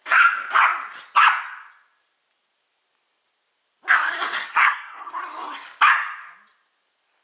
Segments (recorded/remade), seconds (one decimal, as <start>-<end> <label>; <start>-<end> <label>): 0.0-4.5 recorded; 4.5-5.1 remade; 5.1-7.2 recorded